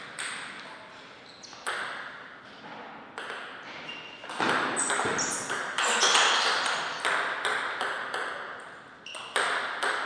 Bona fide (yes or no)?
yes